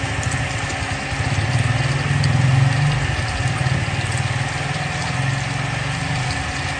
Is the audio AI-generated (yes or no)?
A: no